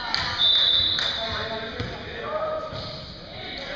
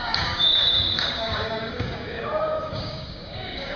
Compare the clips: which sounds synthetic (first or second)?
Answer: second